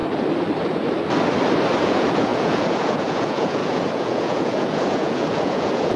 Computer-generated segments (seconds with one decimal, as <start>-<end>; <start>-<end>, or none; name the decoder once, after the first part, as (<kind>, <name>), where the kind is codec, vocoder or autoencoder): 1.8-6.0 (vocoder, Vocos)